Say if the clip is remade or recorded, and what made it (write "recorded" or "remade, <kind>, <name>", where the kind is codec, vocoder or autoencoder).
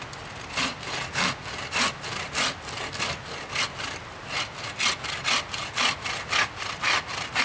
recorded